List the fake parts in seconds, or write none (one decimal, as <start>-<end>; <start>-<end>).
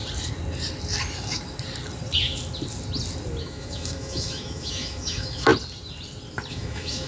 3.4-5.5; 6.5-7.1